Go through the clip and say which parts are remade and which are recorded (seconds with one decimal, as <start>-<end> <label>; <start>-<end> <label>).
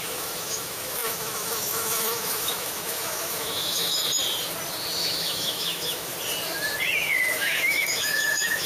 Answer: 0.0-4.0 remade; 4.0-5.0 recorded; 5.0-6.1 remade; 6.1-7.3 recorded; 7.3-8.7 remade